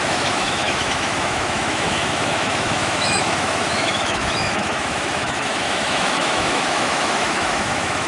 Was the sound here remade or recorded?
remade